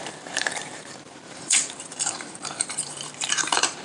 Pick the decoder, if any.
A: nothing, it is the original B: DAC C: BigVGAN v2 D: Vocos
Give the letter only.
C